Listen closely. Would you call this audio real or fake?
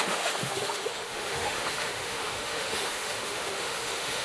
fake